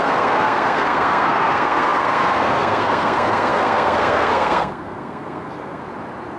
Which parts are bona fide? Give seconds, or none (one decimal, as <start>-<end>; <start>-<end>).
5.8-6.4